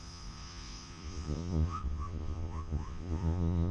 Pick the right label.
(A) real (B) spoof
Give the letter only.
B